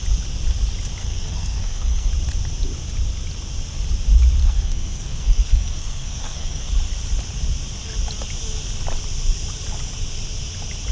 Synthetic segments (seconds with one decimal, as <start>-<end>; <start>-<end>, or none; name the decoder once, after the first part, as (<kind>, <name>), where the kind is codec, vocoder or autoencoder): 1.0-2.1 (codec, SNAC); 4.4-6.7